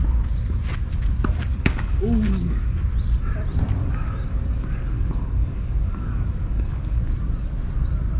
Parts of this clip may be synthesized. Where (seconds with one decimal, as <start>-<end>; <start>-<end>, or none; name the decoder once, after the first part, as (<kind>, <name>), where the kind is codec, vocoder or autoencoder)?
1.5-2.8 (codec, DAC); 3.8-7.0